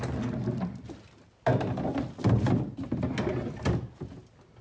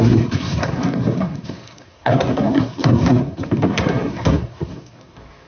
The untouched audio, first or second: first